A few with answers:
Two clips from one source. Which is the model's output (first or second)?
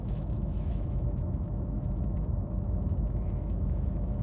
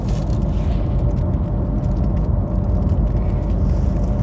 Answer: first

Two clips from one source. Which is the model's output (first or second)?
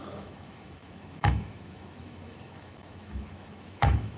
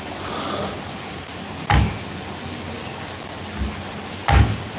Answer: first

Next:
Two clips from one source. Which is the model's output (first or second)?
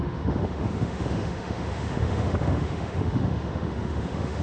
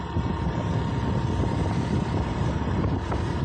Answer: first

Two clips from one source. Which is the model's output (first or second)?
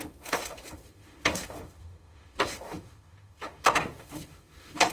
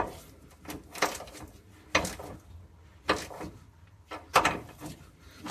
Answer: first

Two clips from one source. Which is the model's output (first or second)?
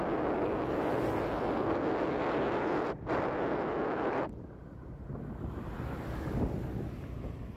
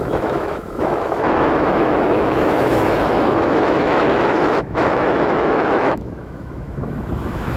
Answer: second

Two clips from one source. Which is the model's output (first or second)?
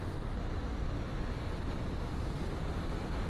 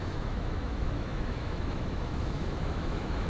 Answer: second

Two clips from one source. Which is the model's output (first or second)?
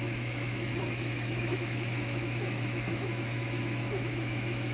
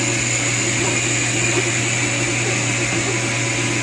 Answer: first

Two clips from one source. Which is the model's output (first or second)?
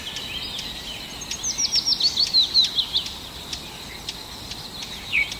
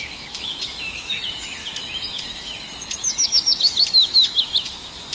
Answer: second